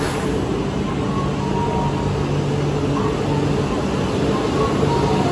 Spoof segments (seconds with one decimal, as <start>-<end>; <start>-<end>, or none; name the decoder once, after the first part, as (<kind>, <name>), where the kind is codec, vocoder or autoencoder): none